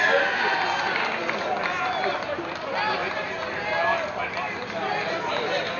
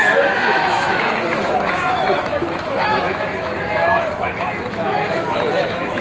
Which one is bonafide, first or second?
first